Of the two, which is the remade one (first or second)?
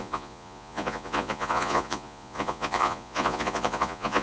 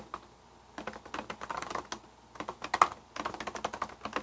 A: first